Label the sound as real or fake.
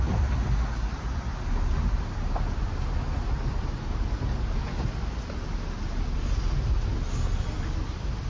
real